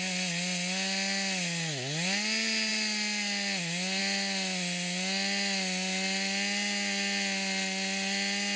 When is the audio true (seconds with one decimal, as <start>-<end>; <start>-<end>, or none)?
0.0-8.6